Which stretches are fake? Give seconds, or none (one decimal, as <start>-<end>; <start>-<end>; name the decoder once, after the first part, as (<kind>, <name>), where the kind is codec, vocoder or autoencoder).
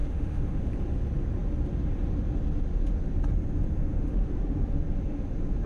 0.0-0.7 (autoencoder, DAC-VAE); 3.8-4.4